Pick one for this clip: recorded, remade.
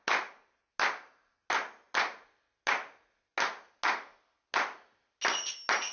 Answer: recorded